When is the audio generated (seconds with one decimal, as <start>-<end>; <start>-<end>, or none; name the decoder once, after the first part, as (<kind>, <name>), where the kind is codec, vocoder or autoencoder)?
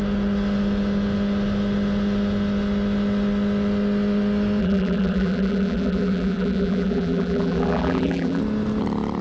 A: 4.6-8.4 (vocoder, BigVGAN v2)